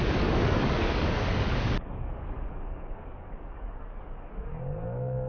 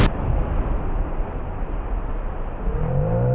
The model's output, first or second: first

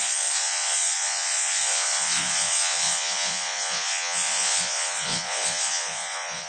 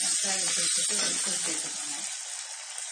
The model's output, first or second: first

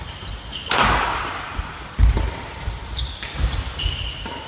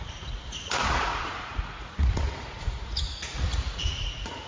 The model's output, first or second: second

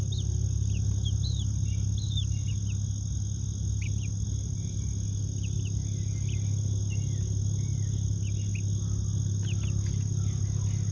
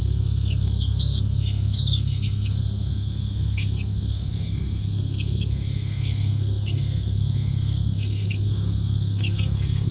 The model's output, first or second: second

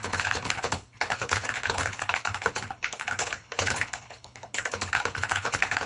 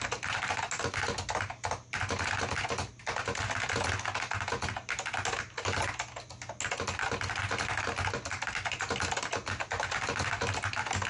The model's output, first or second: first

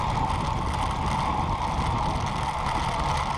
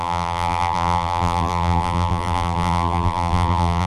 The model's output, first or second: second